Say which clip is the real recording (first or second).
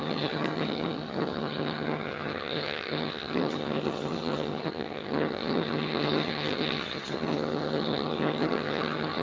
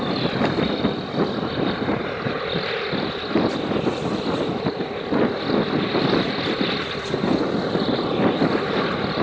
second